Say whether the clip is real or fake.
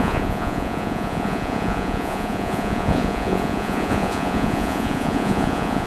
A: fake